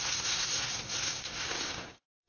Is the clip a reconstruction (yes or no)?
yes